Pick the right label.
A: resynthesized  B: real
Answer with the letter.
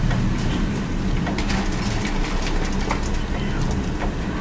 B